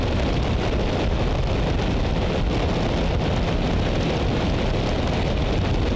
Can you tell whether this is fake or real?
real